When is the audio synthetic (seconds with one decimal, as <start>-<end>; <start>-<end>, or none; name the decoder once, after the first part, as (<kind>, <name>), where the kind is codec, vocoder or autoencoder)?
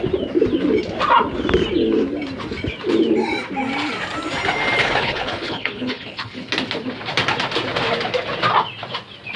4.8-6.5 (codec, HILCodec)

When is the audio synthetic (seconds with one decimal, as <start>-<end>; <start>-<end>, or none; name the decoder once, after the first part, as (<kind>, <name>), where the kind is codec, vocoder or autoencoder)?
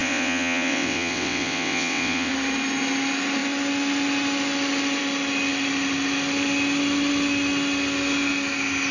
0.0-2.3 (vocoder, WaveNeXt)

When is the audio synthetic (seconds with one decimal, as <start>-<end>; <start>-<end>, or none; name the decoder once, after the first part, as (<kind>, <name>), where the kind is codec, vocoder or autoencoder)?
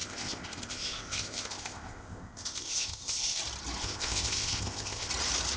0.0-3.4 (codec, ZipCodec); 3.8-5.1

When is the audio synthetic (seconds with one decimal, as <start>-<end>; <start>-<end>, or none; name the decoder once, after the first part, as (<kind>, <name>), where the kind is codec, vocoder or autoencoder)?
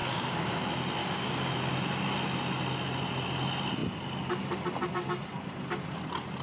0.0-0.5 (codec, DAC); 1.0-1.5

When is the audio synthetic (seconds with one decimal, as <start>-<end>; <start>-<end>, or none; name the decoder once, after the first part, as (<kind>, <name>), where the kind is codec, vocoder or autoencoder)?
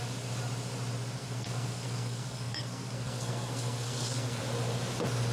1.2-4.4 (codec, SNAC)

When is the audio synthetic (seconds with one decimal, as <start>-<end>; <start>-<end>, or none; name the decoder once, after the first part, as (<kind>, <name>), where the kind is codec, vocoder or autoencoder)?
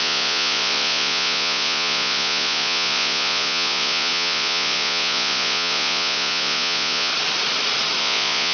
0.0-7.1 (vocoder, Vocos); 8.0-8.5